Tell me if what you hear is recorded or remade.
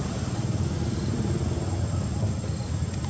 recorded